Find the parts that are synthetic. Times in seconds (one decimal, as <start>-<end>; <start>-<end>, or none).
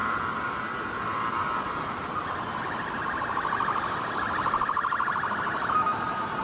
none